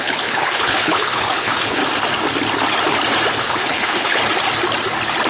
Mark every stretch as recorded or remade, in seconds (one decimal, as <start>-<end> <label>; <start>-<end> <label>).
0.0-1.8 remade; 1.8-3.4 recorded; 3.4-4.2 remade; 4.2-5.3 recorded